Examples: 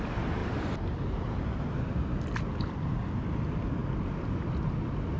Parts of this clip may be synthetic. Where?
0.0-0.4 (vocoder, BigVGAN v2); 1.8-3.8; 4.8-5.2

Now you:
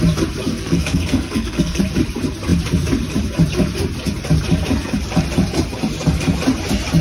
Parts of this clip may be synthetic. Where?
0.5-1.8 (codec, SNAC)

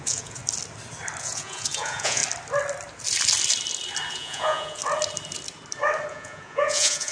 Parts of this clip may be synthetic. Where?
0.0-0.4 (vocoder, Vocos); 1.2-2.2; 4.1-4.8; 6.1-7.1

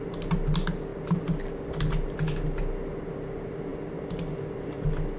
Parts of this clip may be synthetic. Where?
none

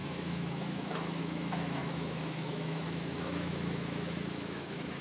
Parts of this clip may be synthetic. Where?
0.0-5.0 (autoencoder, DAC-VAE)